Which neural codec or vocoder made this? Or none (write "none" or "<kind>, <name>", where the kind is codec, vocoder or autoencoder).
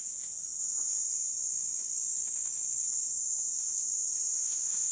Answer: autoencoder, DAC-VAE